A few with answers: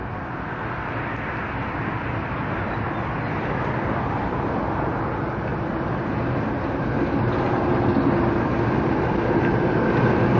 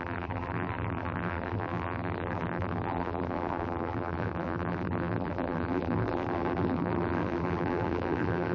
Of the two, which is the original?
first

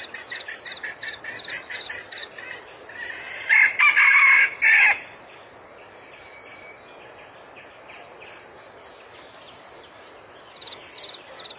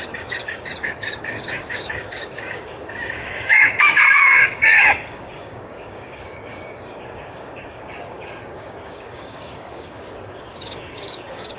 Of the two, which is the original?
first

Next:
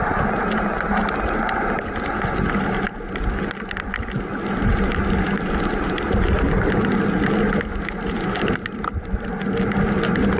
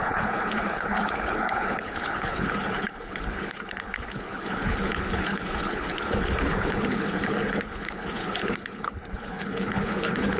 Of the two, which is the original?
first